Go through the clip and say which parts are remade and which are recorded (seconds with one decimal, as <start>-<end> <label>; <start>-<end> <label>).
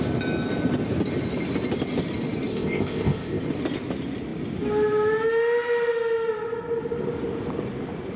0.0-2.5 recorded; 2.5-3.4 remade; 3.4-8.2 recorded